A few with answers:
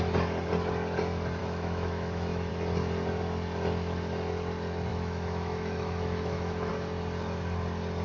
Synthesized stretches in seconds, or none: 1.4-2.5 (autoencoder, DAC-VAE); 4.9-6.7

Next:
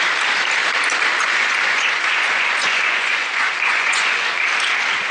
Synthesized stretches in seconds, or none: 1.2-4.3 (vocoder, Vocos)

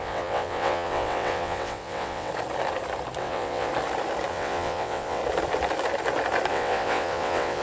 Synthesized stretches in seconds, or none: 0.0-2.3 (vocoder, WaveNeXt); 3.2-3.7; 4.3-5.2; 6.5-7.6